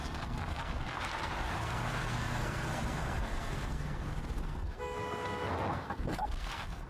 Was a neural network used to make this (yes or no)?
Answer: yes